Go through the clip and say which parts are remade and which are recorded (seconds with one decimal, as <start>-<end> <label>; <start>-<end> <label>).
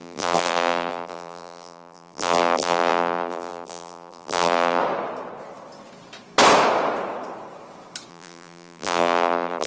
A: 0.0-4.8 remade; 4.8-8.1 recorded; 8.1-9.7 remade